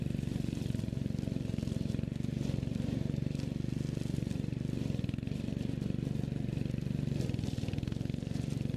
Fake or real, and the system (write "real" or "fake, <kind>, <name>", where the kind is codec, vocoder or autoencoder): real